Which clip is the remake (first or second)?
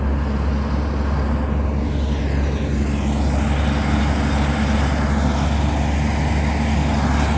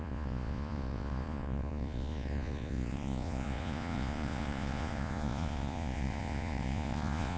second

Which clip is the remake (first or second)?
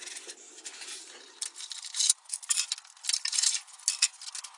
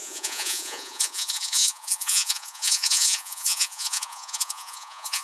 second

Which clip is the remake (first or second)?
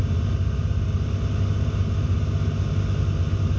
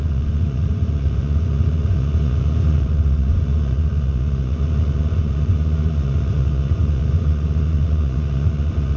second